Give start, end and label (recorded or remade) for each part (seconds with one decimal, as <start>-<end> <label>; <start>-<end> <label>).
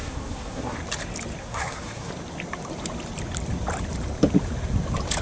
0.0-0.8 remade; 0.8-1.4 recorded; 1.4-2.1 remade; 2.1-5.2 recorded